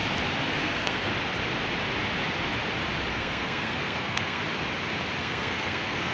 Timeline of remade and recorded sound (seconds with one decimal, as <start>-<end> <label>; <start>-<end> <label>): 0.0-0.5 recorded; 0.5-1.1 remade; 1.1-3.1 recorded; 3.1-4.4 remade; 4.4-5.2 recorded; 5.2-6.1 remade